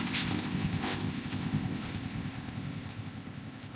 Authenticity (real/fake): fake